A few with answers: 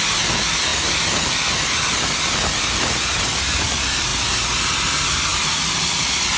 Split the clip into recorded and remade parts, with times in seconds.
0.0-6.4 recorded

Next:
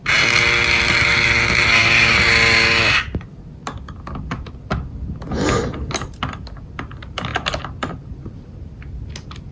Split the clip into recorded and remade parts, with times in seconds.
0.0-9.5 recorded

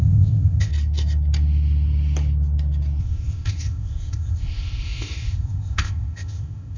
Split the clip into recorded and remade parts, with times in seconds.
0.0-0.7 remade; 0.7-3.0 recorded; 3.0-6.8 remade

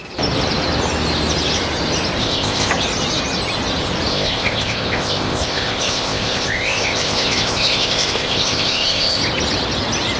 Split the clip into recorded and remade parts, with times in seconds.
0.0-2.2 recorded; 2.2-2.7 remade; 2.7-4.1 recorded; 4.1-9.2 remade; 9.2-10.2 recorded

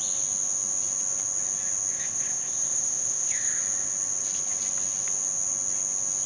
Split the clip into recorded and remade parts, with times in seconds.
0.0-1.9 recorded; 1.9-3.6 remade; 3.6-6.3 recorded